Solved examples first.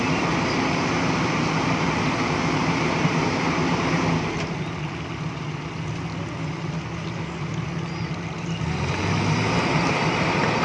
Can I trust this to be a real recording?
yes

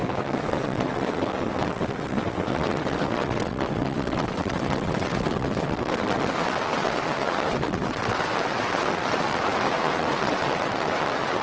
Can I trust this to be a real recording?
no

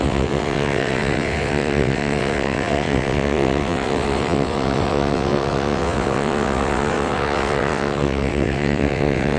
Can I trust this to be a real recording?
no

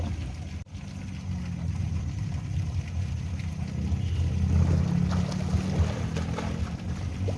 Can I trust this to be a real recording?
yes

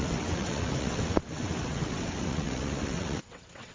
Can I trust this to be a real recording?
no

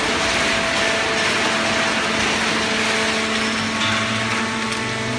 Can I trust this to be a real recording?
yes